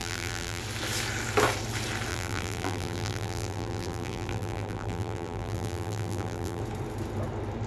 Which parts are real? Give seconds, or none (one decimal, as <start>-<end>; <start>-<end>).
0.6-2.1; 6.6-7.7